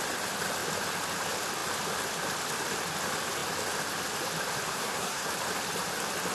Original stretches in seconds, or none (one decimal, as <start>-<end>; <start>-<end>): 0.0-4.7; 5.3-6.3